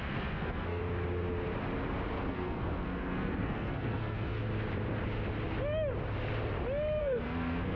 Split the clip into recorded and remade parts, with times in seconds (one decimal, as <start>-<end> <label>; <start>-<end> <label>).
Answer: 0.0-0.8 remade; 0.8-2.3 recorded; 2.3-4.4 remade; 4.4-7.0 recorded; 7.0-7.8 remade